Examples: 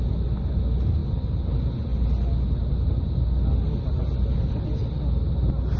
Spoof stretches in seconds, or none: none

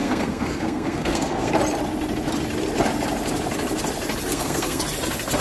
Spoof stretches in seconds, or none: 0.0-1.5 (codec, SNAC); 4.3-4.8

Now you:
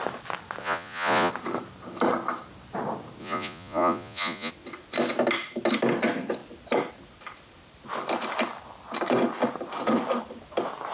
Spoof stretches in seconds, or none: 0.6-1.3 (vocoder, Vocos); 3.2-4.5

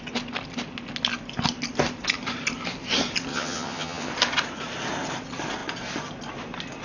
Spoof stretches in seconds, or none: 3.3-4.1 (vocoder, HiFi-GAN)

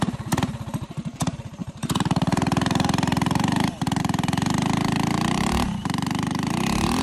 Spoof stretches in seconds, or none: 0.0-7.0 (vocoder, BigVGAN v2)

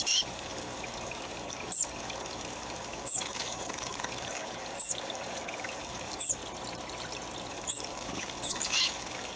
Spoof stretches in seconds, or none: 0.0-6.4 (codec, DAC); 7.5-9.4

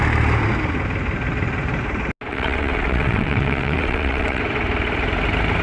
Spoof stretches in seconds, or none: 2.3-4.4 (vocoder, WaveNeXt)